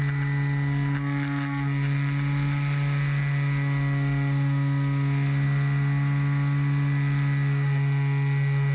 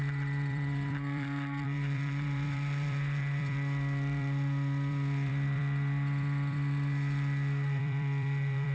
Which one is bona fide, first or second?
first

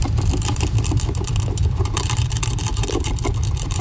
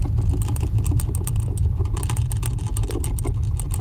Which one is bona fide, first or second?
second